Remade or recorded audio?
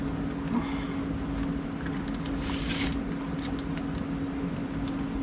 recorded